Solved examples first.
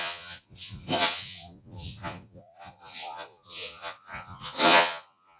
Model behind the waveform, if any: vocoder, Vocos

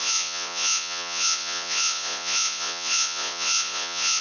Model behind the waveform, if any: vocoder, Vocos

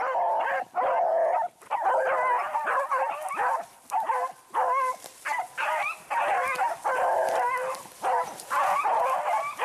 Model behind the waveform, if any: none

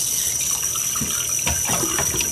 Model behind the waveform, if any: none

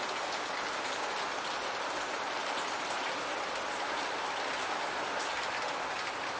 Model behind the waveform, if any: none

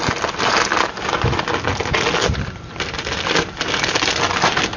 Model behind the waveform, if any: none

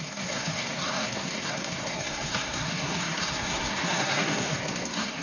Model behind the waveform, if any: codec, SNAC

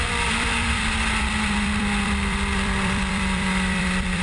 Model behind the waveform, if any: vocoder, BigVGAN v2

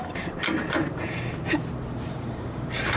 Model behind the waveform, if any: vocoder, BigVGAN v2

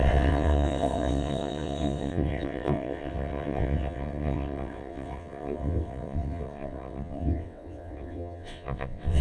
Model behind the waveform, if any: vocoder, WaveNeXt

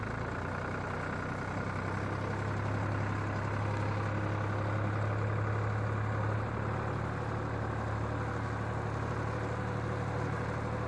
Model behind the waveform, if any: none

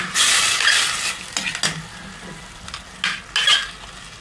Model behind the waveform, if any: none